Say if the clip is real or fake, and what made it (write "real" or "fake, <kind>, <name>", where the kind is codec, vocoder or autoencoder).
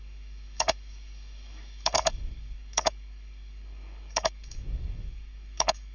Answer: fake, codec, DAC